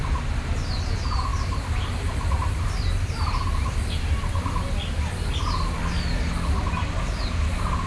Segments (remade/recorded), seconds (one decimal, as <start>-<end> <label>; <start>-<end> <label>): 0.0-1.3 recorded; 1.3-2.9 remade; 2.9-7.9 recorded